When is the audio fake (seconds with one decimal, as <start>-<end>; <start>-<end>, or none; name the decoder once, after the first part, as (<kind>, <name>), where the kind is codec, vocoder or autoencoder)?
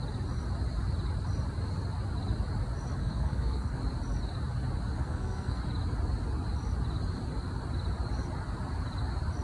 3.0-3.8 (codec, SNAC); 5.0-5.6